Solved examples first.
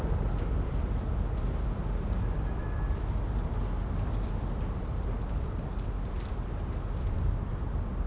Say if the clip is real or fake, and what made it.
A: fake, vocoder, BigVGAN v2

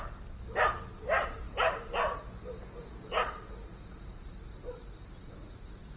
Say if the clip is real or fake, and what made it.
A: real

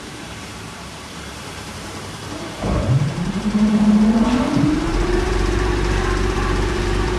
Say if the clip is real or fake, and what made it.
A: fake, vocoder, BigVGAN v2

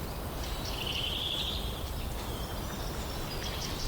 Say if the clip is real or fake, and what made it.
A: real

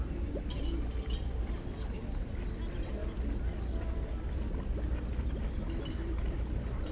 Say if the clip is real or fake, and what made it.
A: real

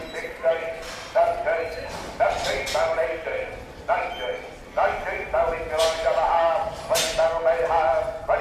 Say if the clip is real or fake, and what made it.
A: real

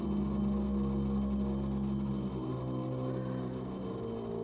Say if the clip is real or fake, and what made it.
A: real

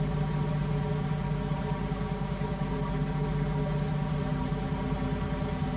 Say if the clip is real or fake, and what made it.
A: real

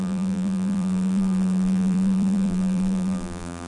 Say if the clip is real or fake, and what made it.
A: fake, vocoder, BigVGAN v2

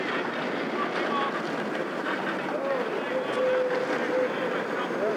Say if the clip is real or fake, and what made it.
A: real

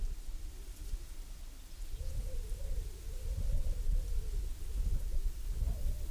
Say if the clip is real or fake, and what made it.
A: real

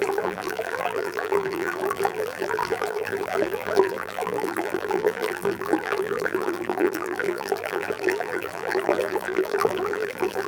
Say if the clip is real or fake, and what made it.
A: fake, vocoder, BigVGAN v2